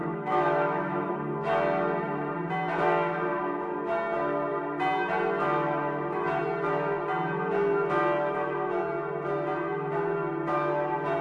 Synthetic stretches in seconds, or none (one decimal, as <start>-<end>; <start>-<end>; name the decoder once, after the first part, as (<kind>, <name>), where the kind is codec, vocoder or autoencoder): 0.0-1.1 (autoencoder, DAC-VAE)